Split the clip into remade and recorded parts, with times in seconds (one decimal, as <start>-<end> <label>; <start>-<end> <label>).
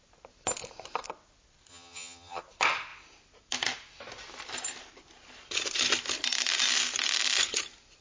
0.0-1.7 recorded; 1.7-2.4 remade; 2.4-8.0 recorded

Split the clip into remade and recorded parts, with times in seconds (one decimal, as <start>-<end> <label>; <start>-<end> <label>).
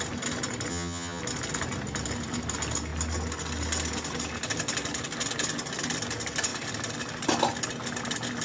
0.0-0.7 recorded; 0.7-1.2 remade; 1.2-8.4 recorded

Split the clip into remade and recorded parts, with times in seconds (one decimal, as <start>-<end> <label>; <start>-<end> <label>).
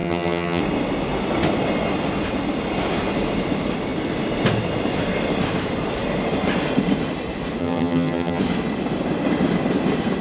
0.0-0.6 remade; 0.6-7.6 recorded; 7.6-8.4 remade; 8.4-10.2 recorded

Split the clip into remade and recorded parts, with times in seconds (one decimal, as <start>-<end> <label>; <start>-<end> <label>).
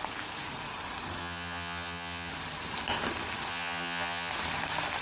0.0-1.2 recorded; 1.2-2.3 remade; 2.3-3.5 recorded; 3.5-4.3 remade; 4.3-5.0 recorded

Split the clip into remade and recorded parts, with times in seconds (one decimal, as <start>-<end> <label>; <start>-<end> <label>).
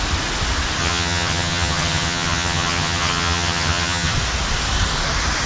0.0-0.8 recorded; 0.8-4.1 remade; 4.1-5.5 recorded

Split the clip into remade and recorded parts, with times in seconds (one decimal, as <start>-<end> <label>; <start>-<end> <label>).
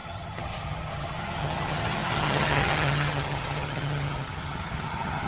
0.0-5.3 remade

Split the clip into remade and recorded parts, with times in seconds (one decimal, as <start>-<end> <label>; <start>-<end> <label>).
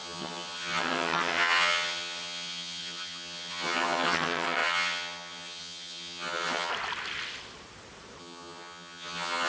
0.0-6.7 remade; 6.7-8.2 recorded; 8.2-9.5 remade